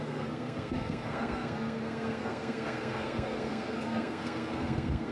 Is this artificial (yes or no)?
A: yes